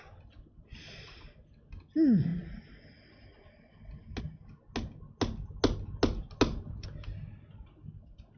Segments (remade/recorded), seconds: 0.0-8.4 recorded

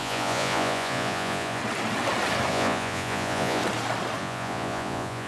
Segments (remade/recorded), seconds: 0.0-1.6 remade; 1.6-2.5 recorded; 2.5-3.6 remade; 3.6-4.2 recorded; 4.2-5.3 remade

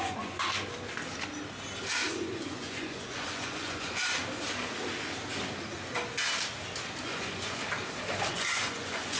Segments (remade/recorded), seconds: 0.0-0.5 remade; 0.5-2.1 recorded; 2.1-4.2 remade; 4.2-7.0 recorded; 7.0-7.6 remade; 7.6-8.3 recorded; 8.3-9.2 remade